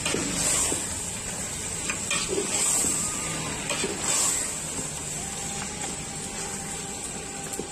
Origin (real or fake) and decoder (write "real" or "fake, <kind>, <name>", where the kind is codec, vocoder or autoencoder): real